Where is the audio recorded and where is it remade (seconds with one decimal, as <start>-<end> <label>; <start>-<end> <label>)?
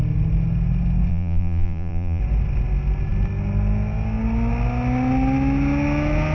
0.0-1.1 recorded; 1.1-2.2 remade; 2.2-6.3 recorded